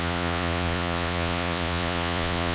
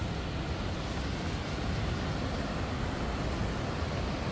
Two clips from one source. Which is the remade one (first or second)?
first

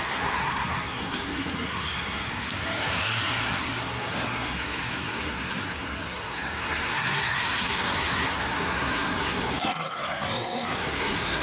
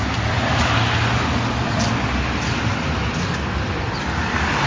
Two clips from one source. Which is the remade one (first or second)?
first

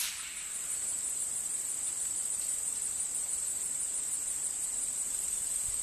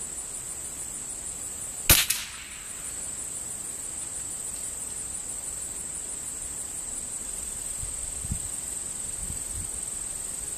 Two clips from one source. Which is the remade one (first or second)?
first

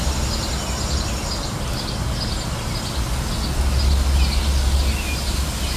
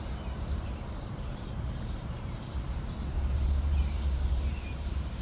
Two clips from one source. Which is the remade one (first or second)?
second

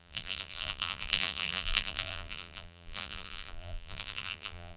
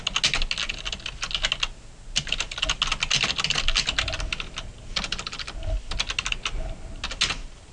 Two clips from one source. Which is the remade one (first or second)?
first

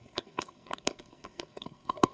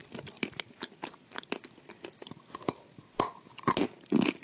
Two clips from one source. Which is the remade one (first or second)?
first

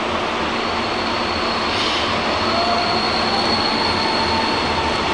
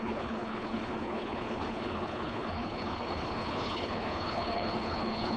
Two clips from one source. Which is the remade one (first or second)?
second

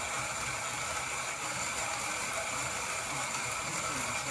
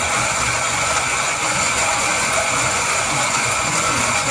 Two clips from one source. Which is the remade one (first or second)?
second